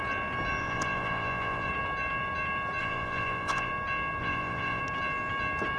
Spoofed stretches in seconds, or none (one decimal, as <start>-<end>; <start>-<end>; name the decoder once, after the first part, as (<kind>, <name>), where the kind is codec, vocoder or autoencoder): 0.6-1.7 (vocoder, Vocos); 2.8-3.7; 4.2-4.8